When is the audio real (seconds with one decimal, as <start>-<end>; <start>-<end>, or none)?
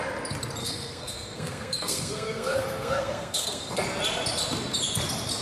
0.0-0.6; 3.8-5.4